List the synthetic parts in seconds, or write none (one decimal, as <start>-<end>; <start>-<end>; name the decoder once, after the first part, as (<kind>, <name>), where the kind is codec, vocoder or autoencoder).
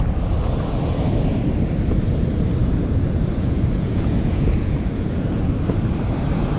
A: 2.6-5.5 (vocoder, Vocos)